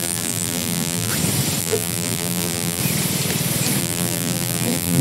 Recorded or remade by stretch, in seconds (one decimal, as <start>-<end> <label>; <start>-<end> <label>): 0.0-1.1 remade; 1.1-1.6 recorded; 1.6-2.8 remade; 2.8-3.8 recorded; 3.8-5.0 remade